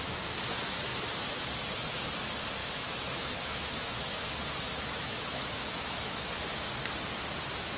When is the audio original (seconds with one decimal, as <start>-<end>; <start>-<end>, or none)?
0.0-2.6; 6.3-7.8